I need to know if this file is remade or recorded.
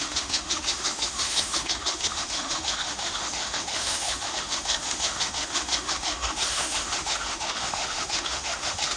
remade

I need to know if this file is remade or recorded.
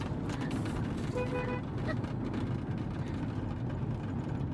recorded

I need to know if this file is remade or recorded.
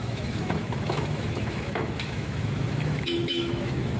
remade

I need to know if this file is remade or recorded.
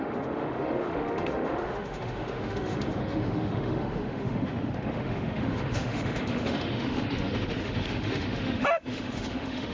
remade